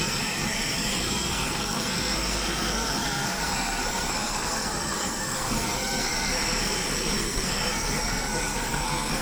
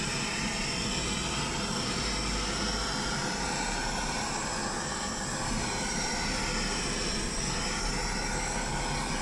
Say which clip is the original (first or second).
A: second